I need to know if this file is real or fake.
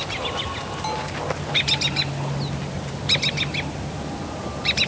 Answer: real